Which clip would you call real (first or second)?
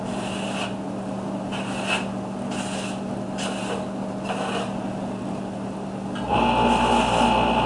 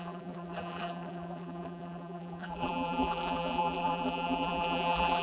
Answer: first